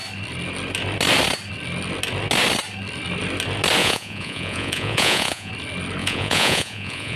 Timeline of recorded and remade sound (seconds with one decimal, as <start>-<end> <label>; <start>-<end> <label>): 0.0-3.8 recorded; 3.8-5.5 remade; 5.5-6.0 recorded; 6.0-7.2 remade

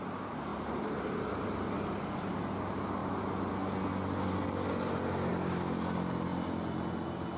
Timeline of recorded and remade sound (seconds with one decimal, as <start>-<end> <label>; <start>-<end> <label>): 0.0-7.4 recorded

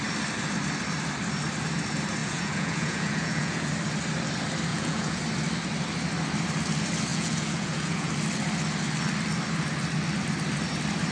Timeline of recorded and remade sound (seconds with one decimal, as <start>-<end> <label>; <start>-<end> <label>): 0.0-2.2 recorded; 2.2-3.7 remade; 3.7-4.7 recorded; 4.7-5.2 remade; 5.2-7.1 recorded; 7.1-8.1 remade; 8.1-11.1 recorded

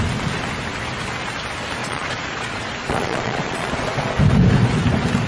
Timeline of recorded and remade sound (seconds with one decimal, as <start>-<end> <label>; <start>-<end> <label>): 0.0-1.8 recorded; 1.8-3.7 remade; 3.7-5.3 recorded

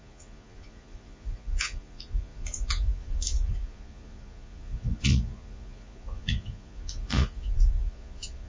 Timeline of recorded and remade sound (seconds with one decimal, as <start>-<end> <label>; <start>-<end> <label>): 0.0-8.5 remade

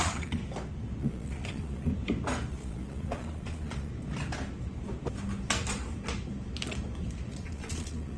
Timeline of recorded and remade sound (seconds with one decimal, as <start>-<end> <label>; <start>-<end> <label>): 0.0-0.4 remade; 0.4-1.0 recorded; 1.0-1.9 remade; 1.9-2.5 recorded; 2.5-3.9 remade; 3.9-7.3 recorded; 7.3-8.2 remade